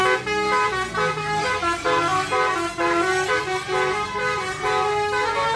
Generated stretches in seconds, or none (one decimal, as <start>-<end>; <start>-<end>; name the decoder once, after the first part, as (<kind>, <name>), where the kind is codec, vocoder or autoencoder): none